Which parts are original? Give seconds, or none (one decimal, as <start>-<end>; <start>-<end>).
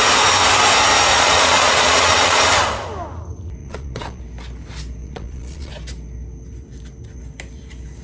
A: 0.0-1.1; 2.4-3.6; 4.2-5.0; 5.7-8.0